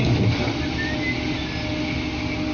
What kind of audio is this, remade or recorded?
recorded